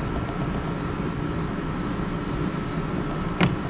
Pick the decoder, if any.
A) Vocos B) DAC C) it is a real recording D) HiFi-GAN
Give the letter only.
C